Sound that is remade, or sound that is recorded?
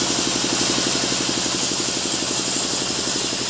recorded